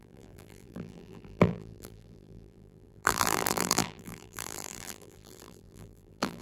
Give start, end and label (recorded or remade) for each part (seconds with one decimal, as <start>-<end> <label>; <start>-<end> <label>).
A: 0.0-6.4 remade

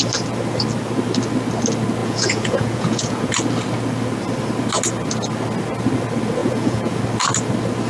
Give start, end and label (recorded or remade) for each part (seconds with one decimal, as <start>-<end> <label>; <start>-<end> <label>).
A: 0.0-2.0 recorded; 2.0-3.3 remade; 3.3-6.4 recorded; 6.4-7.0 remade; 7.0-7.9 recorded

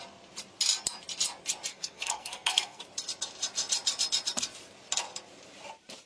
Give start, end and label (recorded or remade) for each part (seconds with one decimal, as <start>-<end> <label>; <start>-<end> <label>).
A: 0.0-1.7 recorded; 1.7-2.8 remade; 2.8-6.1 recorded